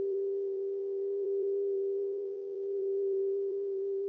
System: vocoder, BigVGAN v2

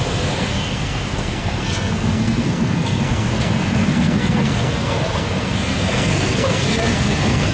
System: codec, SNAC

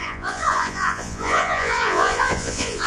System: vocoder, Vocos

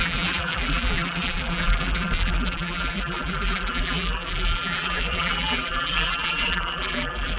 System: vocoder, BigVGAN v2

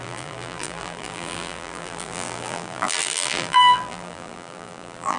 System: vocoder, BigVGAN v2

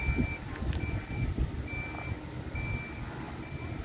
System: none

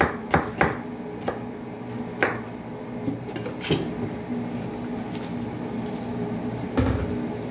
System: none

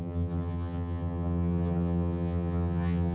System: vocoder, HiFi-GAN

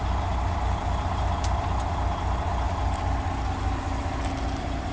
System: none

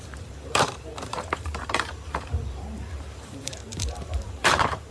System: vocoder, BigVGAN v2